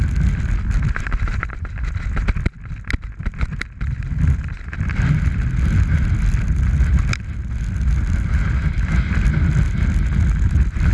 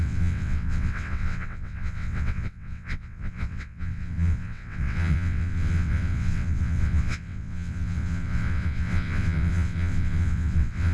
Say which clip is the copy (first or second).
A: second